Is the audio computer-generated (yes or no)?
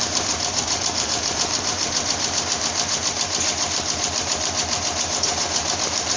yes